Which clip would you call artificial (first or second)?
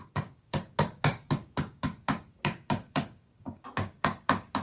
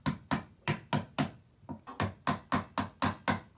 first